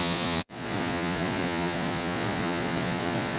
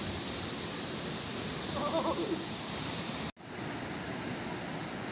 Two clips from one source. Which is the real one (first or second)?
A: second